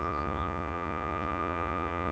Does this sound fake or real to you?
fake